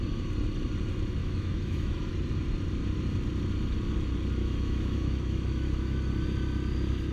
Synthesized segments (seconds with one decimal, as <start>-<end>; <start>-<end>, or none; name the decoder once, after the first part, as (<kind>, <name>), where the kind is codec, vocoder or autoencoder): 1.2-2.1 (autoencoder, DAC-VAE); 4.4-6.0